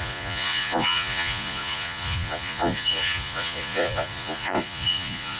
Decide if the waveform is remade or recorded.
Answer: remade